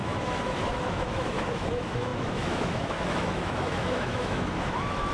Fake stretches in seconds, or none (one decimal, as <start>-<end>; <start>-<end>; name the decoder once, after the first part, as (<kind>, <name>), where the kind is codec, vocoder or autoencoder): 0.0-5.1 (autoencoder, DAC-VAE)